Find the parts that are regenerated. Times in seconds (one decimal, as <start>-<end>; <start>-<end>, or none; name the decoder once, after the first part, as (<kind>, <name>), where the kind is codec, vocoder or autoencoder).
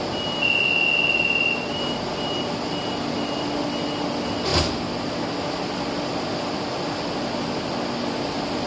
none